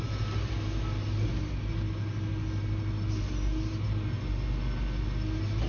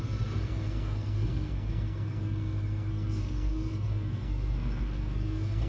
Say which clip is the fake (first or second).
second